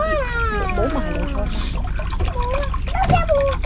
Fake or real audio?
real